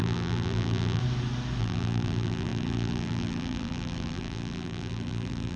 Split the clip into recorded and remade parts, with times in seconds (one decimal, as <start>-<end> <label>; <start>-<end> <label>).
0.0-1.0 remade; 1.0-1.6 recorded; 1.6-5.6 remade